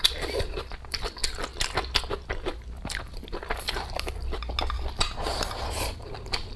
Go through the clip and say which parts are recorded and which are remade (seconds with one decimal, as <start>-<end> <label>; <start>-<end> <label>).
0.0-6.6 recorded